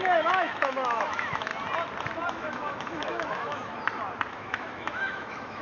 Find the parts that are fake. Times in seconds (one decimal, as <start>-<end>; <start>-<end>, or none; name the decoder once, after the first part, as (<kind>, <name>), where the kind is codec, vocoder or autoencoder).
0.0-1.5 (autoencoder, DAC-VAE); 2.3-3.7; 4.3-5.6